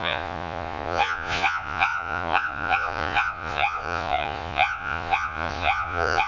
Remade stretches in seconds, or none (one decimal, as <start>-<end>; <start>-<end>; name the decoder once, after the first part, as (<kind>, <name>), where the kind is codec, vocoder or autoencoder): 0.0-6.3 (vocoder, Vocos)